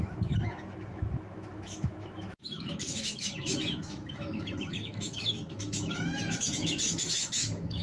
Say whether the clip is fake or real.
fake